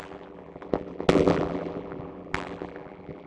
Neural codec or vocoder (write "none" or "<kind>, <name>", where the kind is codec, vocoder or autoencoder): vocoder, BigVGAN v2